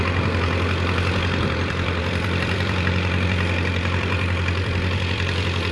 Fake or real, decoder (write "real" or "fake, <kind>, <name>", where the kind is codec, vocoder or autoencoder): fake, vocoder, BigVGAN v2